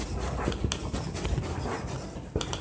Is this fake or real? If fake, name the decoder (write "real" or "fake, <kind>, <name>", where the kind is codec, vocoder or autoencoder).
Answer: real